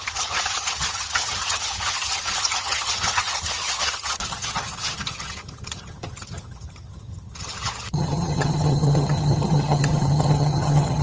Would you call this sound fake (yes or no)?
yes